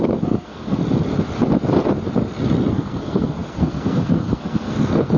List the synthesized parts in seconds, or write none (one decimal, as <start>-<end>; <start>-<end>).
0.0-0.8; 2.7-5.2